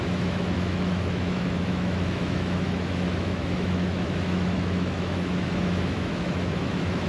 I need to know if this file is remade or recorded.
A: remade